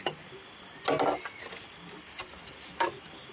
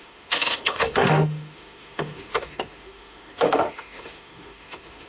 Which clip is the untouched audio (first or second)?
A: first